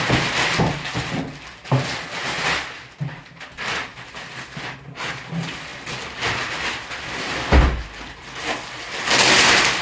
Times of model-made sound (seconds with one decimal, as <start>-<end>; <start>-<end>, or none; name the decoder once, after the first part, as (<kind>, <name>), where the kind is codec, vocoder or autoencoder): none